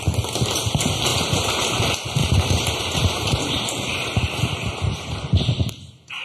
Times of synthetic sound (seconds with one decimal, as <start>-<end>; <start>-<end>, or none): 1.1-1.8; 2.2-5.7